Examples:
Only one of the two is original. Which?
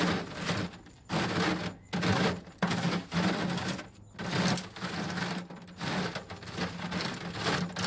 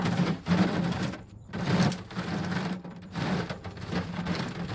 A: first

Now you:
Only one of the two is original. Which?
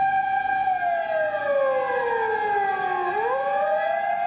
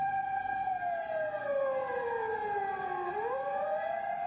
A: first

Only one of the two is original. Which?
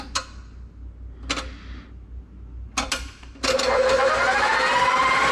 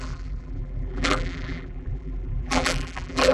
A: first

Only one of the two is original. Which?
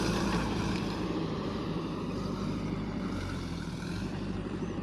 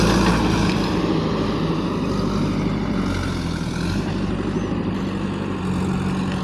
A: second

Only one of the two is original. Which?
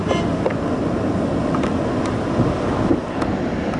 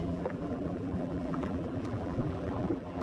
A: first